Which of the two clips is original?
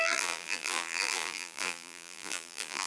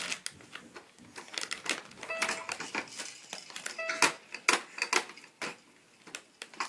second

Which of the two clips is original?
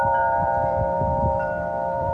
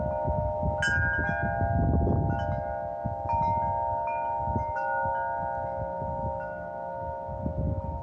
second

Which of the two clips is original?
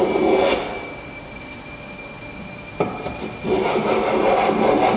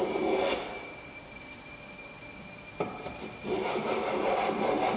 first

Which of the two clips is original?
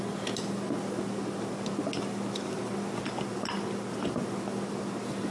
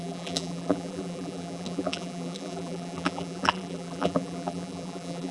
first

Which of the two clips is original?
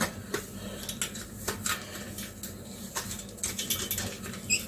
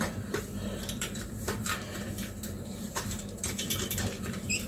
first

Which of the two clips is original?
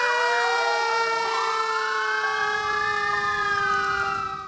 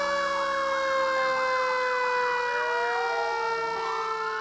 second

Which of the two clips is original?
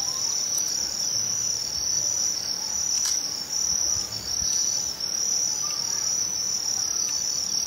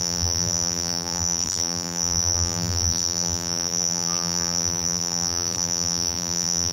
first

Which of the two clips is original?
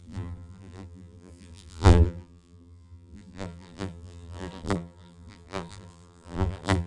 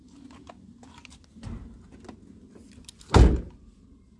second